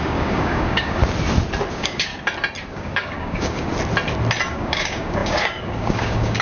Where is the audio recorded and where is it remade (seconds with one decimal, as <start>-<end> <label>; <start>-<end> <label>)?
0.0-1.0 remade; 1.0-1.7 recorded; 1.7-2.1 remade; 2.1-2.7 recorded; 2.7-3.7 remade; 3.7-4.5 recorded; 4.5-6.4 remade